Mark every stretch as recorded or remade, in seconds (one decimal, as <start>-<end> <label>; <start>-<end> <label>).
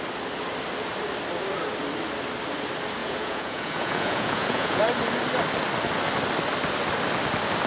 0.0-3.0 recorded; 3.0-4.8 remade; 4.8-7.7 recorded